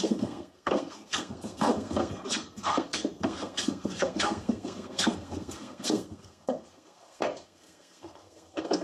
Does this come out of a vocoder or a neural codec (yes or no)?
yes